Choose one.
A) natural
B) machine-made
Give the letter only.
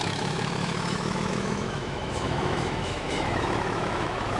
B